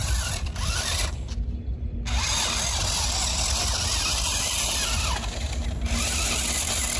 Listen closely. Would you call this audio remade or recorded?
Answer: recorded